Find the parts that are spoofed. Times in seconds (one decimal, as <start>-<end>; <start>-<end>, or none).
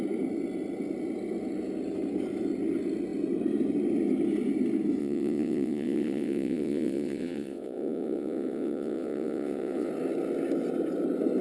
5.0-9.9